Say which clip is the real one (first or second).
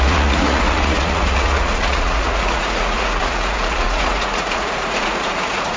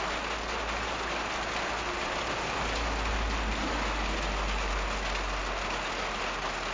second